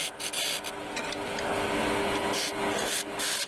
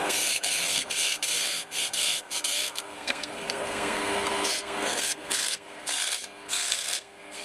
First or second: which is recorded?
first